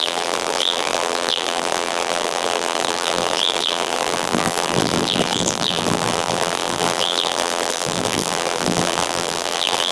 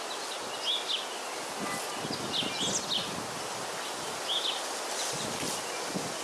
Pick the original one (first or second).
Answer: second